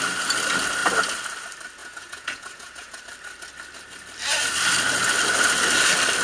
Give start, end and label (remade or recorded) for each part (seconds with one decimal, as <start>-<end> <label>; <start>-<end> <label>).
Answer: 0.0-1.8 recorded; 1.8-3.0 remade; 3.0-6.2 recorded